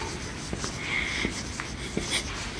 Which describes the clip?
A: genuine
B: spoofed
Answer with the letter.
A